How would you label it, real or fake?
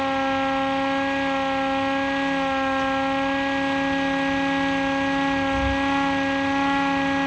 real